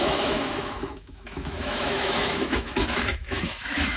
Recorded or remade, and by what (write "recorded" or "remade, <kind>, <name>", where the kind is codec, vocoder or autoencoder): remade, autoencoder, DAC-VAE